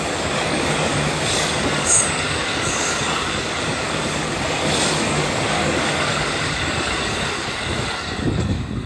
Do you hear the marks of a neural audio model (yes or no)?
yes